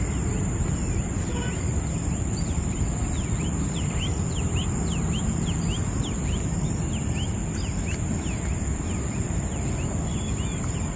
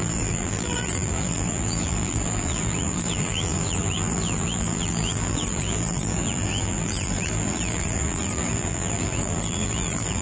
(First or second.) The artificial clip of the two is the second